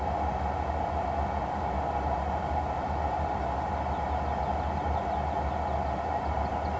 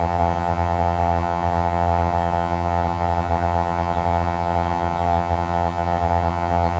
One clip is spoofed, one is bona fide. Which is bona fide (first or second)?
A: first